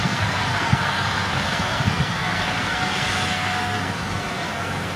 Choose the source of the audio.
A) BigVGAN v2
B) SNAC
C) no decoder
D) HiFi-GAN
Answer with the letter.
B